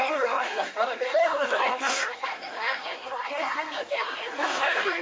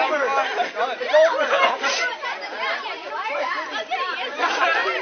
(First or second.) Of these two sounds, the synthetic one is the first